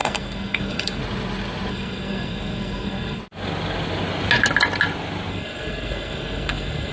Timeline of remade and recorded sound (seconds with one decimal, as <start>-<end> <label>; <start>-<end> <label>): 0.0-1.0 remade; 1.0-1.7 recorded; 1.7-3.2 remade; 3.2-5.3 recorded; 5.3-6.9 remade